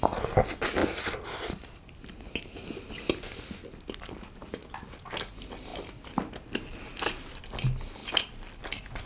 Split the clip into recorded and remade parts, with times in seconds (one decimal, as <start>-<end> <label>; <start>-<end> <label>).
0.0-9.1 recorded